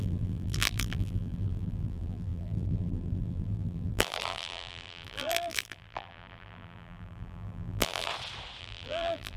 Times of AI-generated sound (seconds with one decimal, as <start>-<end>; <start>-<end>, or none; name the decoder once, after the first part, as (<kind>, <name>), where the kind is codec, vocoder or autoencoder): 0.0-8.1 (vocoder, BigVGAN v2); 8.6-9.4